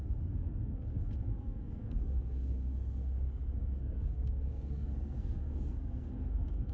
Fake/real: fake